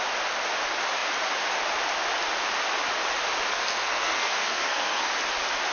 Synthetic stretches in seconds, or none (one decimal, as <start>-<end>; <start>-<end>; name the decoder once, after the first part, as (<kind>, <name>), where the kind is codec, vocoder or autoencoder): 3.5-5.1 (codec, SNAC)